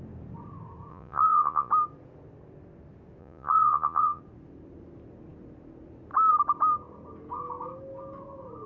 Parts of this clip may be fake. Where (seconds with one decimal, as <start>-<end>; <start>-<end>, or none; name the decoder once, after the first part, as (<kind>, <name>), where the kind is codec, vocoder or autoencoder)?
0.9-1.7 (vocoder, Vocos); 3.2-4.2